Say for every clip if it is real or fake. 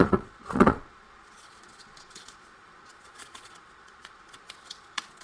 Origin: fake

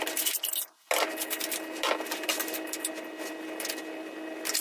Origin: real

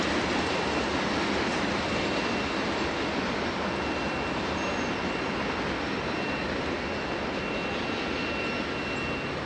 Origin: real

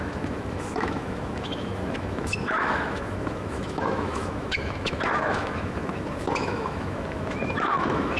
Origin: fake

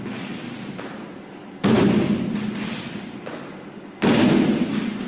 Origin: real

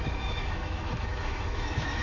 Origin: fake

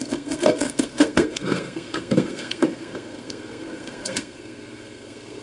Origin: fake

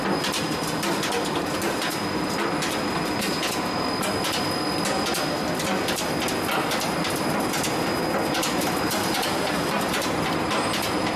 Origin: real